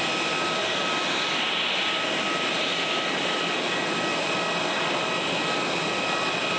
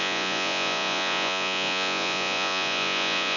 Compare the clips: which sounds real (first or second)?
first